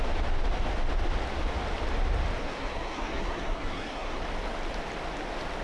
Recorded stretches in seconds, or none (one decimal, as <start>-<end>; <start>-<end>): 0.0-2.4; 4.2-5.6